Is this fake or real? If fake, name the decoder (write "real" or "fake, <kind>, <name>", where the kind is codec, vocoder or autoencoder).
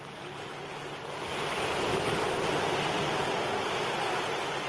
real